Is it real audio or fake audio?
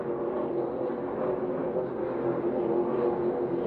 real